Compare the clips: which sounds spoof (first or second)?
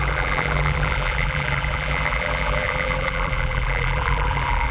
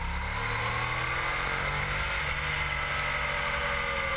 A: first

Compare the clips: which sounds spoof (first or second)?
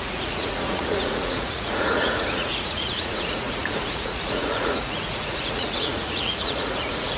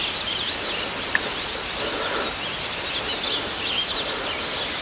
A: first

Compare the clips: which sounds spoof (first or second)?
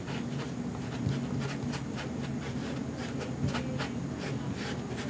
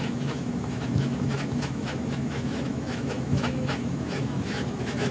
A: second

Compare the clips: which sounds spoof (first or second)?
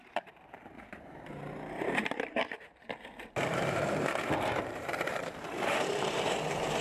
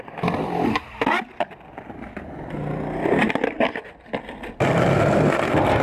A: first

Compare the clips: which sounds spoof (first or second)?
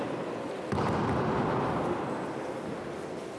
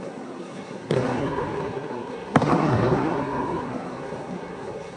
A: second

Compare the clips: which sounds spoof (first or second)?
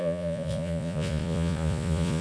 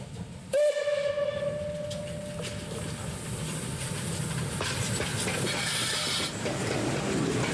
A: first